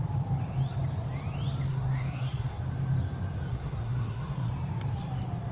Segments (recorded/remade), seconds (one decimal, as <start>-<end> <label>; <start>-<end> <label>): 0.0-1.7 recorded; 1.7-2.6 remade; 2.6-3.5 recorded; 3.5-4.5 remade; 4.5-5.5 recorded